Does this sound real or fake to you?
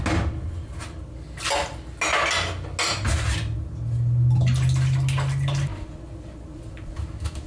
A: real